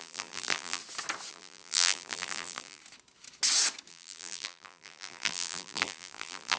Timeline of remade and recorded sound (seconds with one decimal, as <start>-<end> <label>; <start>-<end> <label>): 0.0-0.8 remade; 0.8-1.3 recorded; 1.3-2.8 remade; 2.8-3.9 recorded; 3.9-6.6 remade